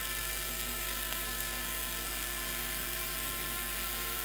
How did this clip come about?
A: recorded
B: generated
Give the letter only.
B